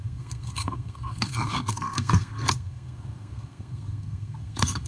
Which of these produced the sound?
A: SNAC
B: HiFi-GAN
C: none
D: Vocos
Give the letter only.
A